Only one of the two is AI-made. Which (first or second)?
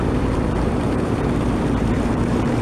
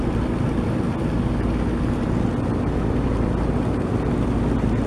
first